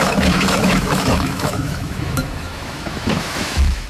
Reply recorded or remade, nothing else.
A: remade